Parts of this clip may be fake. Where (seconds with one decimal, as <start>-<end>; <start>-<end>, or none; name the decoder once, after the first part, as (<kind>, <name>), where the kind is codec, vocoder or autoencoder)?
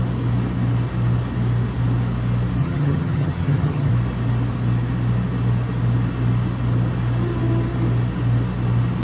2.6-3.9 (vocoder, HiFi-GAN)